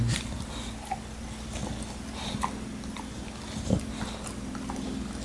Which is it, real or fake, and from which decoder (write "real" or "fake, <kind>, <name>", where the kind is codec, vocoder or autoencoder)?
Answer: real